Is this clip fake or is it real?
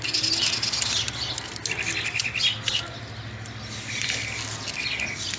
real